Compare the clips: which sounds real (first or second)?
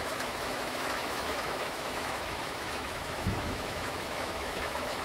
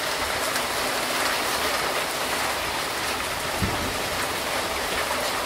second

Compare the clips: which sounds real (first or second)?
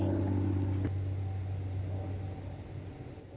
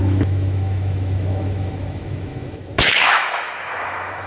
first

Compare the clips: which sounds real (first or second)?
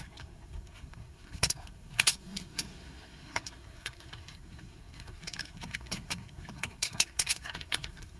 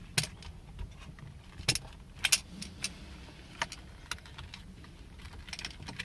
second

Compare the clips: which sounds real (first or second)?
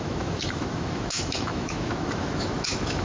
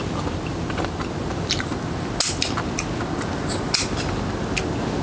second